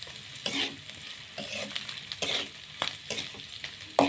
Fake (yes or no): no